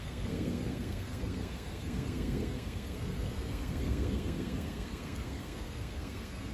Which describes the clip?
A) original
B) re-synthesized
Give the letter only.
B